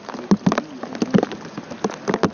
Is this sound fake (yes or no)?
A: no